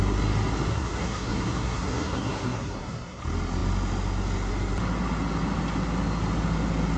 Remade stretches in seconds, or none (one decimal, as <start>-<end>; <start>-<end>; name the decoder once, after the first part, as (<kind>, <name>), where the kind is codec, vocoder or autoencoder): 0.7-3.2 (codec, SNAC)